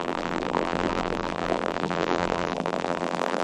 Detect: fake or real fake